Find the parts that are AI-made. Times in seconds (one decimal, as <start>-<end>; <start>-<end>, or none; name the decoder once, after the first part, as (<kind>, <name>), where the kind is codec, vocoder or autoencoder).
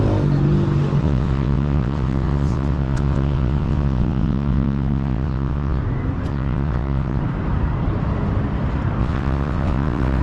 1.0-5.8 (vocoder, WaveNeXt); 6.3-7.2; 9.0-10.2